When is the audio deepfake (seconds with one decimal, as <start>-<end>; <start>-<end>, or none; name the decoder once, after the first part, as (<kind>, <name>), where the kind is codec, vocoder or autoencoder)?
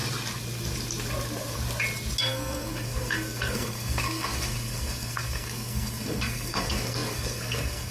2.2-7.9 (codec, SNAC)